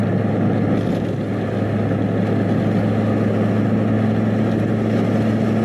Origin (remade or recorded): recorded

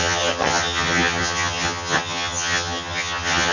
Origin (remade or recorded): remade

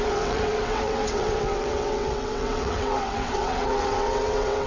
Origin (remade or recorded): remade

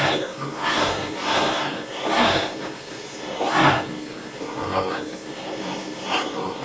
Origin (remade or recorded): remade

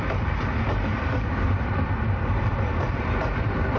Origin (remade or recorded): remade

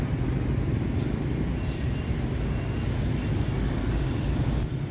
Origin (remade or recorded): recorded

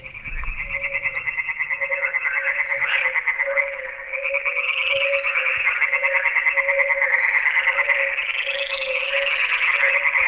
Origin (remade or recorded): recorded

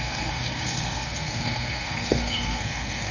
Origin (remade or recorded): remade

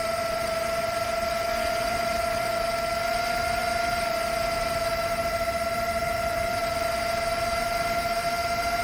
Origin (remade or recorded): remade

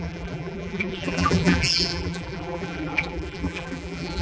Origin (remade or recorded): remade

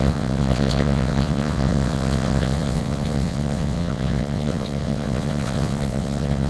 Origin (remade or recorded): remade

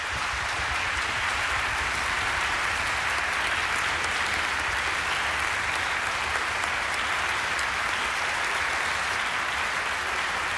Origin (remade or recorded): recorded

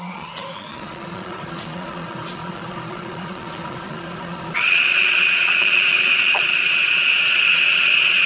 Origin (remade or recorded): remade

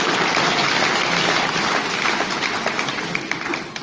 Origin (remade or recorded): recorded